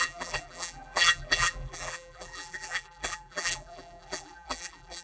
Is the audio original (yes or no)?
no